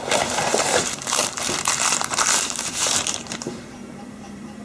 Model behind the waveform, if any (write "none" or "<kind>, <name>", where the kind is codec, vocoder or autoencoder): vocoder, BigVGAN v2